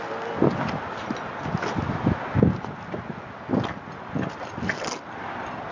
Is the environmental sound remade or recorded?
recorded